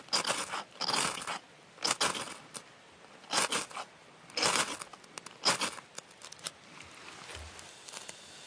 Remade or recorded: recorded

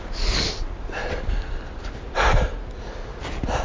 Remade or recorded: recorded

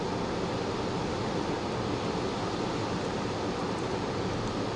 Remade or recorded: recorded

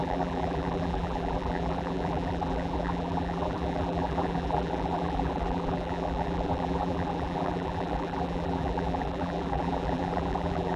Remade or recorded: remade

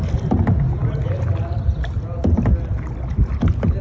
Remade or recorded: recorded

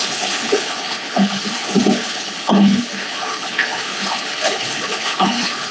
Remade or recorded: remade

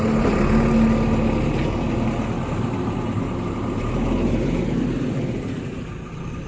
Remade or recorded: recorded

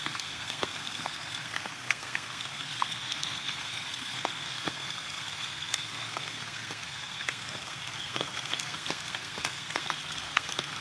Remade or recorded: remade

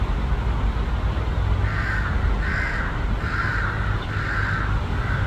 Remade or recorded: recorded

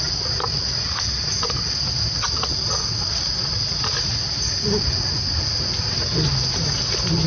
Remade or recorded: recorded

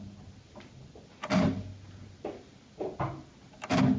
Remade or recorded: recorded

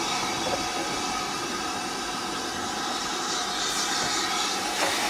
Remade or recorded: recorded